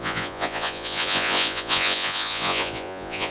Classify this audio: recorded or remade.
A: remade